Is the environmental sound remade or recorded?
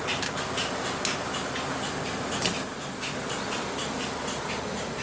recorded